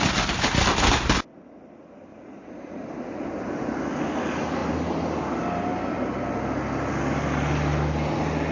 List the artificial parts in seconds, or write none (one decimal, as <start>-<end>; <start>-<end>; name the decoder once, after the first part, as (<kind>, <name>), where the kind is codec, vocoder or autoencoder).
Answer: 2.1-2.6 (vocoder, Vocos)